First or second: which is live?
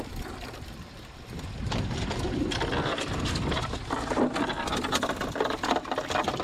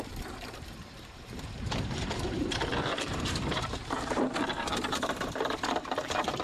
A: first